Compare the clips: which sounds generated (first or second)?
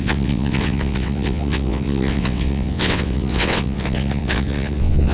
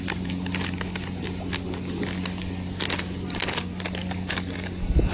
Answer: first